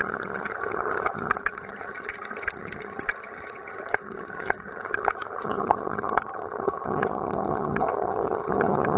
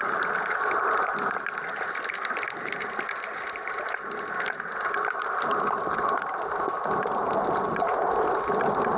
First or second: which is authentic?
second